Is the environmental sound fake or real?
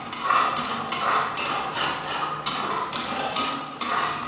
real